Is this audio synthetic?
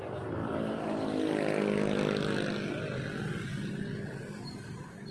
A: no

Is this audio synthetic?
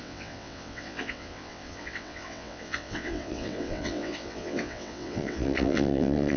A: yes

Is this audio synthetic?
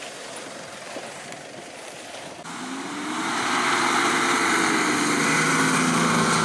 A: no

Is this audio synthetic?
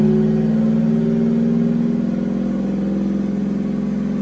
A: no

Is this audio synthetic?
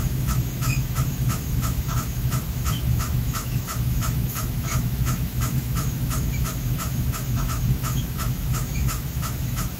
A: yes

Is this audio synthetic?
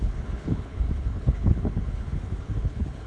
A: yes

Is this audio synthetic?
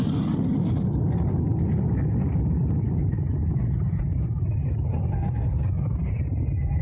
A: no